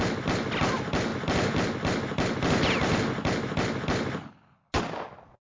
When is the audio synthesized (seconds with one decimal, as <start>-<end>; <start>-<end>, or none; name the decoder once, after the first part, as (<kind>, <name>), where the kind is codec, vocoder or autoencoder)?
none